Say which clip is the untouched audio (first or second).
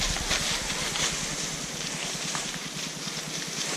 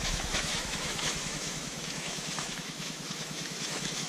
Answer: first